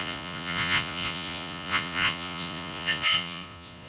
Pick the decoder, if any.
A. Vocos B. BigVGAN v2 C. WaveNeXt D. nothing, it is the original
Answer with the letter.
A